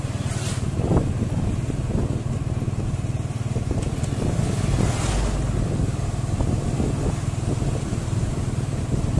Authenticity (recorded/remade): recorded